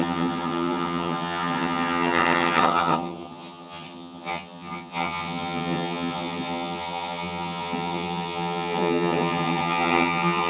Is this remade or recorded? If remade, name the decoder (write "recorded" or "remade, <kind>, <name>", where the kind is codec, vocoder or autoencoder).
remade, vocoder, HiFi-GAN